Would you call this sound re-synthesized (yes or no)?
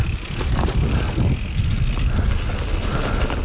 no